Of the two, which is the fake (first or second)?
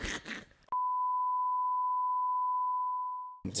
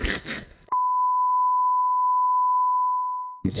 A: second